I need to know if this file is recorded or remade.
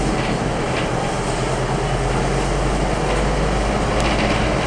recorded